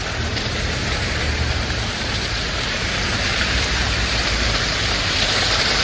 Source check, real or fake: fake